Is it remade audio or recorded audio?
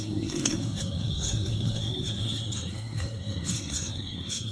remade